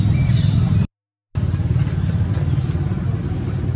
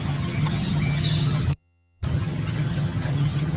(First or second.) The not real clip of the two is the second